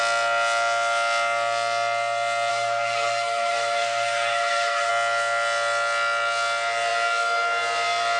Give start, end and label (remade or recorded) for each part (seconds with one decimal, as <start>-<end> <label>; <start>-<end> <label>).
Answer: 0.0-2.5 recorded; 2.5-4.9 remade; 4.9-8.2 recorded